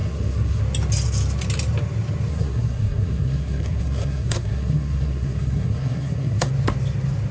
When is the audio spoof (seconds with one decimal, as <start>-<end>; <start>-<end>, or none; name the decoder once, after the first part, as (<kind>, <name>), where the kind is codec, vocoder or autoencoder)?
0.0-0.6 (codec, SNAC); 2.3-6.5